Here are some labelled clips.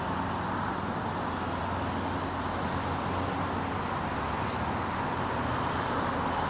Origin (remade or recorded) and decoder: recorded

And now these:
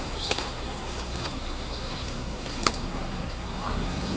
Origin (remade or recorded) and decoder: remade, codec, SNAC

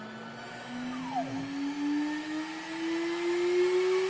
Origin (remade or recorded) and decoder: recorded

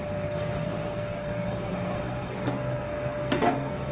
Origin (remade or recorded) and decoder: remade, codec, SNAC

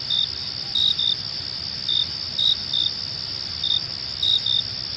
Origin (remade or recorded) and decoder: recorded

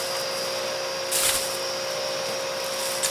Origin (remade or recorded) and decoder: recorded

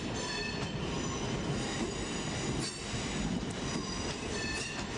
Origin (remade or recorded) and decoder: recorded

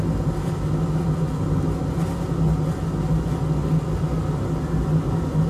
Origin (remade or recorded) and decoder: recorded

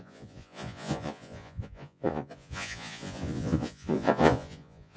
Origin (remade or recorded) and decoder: remade, vocoder, Vocos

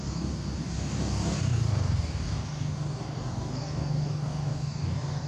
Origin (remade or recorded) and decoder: remade, codec, DAC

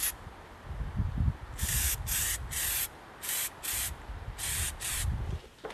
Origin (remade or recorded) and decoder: recorded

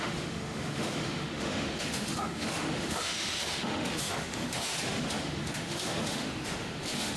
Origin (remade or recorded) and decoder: remade, autoencoder, DAC-VAE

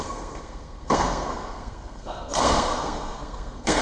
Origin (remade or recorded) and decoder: remade, codec, SNAC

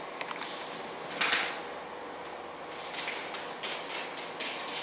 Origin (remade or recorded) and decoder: recorded